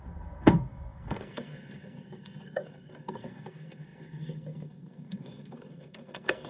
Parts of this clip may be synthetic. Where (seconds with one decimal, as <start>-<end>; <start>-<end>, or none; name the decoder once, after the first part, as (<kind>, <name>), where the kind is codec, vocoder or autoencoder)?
0.0-6.5 (codec, SNAC)